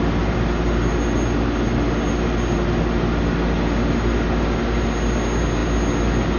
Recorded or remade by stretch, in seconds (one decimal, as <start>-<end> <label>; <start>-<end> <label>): 0.0-6.4 recorded